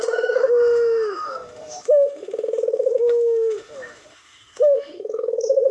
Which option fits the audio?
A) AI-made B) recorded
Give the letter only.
A